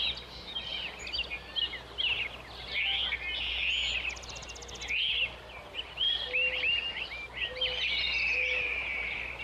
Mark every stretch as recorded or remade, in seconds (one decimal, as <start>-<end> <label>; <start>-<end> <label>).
0.0-0.7 remade; 0.7-2.8 recorded; 2.8-9.4 remade